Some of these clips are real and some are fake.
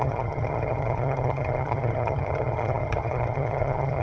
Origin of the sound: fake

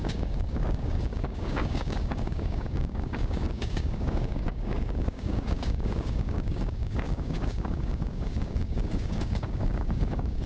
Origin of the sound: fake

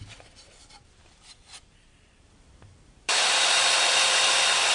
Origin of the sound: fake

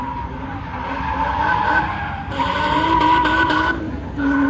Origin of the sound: real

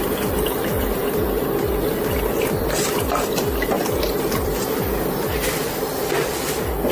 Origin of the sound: real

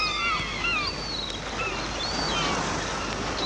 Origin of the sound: real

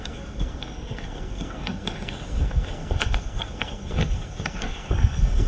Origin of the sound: fake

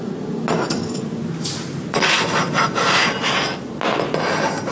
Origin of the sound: real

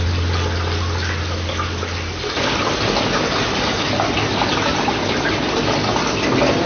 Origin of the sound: real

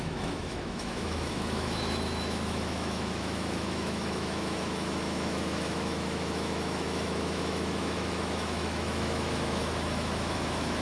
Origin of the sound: fake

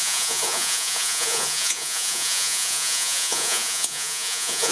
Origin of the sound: fake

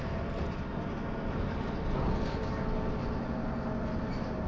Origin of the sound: real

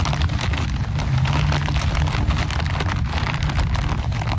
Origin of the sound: real